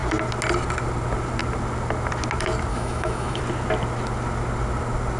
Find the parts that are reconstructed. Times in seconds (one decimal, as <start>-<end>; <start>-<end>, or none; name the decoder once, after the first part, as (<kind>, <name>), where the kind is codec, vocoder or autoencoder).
2.7-3.4 (autoencoder, DAC-VAE)